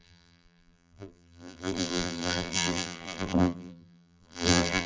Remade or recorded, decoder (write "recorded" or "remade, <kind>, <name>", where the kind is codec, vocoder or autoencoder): remade, vocoder, BigVGAN v2